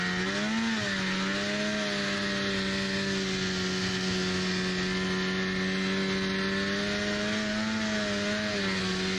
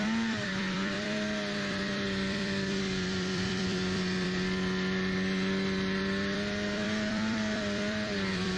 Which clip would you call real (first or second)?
first